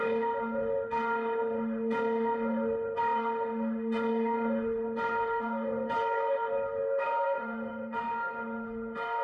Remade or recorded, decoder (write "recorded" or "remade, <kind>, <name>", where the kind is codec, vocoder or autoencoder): remade, autoencoder, DAC-VAE